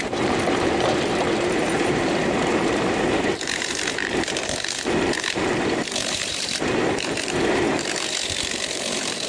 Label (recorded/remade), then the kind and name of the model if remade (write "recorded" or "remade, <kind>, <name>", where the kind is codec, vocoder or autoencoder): remade, vocoder, BigVGAN v2